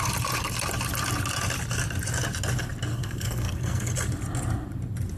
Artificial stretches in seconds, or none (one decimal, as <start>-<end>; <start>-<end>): 2.9-3.9